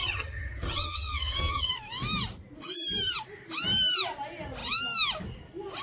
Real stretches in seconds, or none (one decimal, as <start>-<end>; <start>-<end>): 1.7-5.8